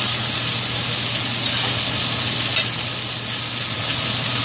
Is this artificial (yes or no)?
no